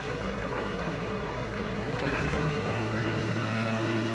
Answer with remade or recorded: remade